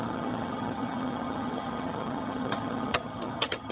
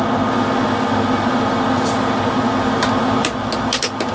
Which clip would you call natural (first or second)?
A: second